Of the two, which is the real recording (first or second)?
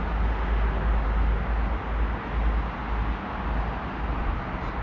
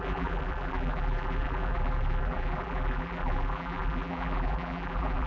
first